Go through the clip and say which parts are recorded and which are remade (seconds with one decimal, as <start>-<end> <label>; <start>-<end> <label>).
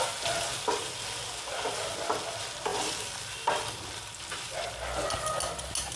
0.0-2.7 recorded; 2.7-5.4 remade; 5.4-6.0 recorded